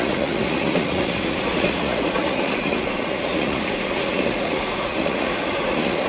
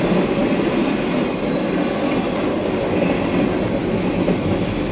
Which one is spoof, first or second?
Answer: first